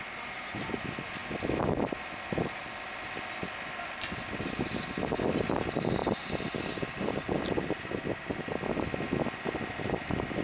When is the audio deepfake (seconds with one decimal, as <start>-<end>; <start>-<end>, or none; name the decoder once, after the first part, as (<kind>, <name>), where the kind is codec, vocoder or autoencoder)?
1.2-4.8 (vocoder, BigVGAN v2); 6.0-7.4